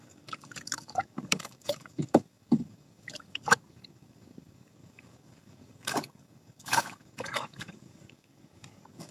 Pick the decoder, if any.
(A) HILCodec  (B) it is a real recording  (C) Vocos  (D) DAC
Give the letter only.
D